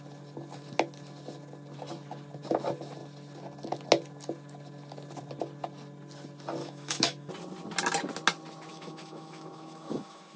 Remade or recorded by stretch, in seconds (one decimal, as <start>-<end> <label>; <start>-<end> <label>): 0.0-6.6 recorded; 6.6-7.3 remade; 7.3-8.7 recorded; 8.7-10.4 remade